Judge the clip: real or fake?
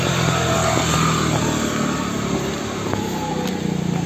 real